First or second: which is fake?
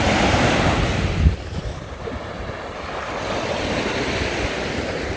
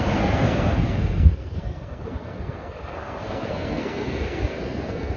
second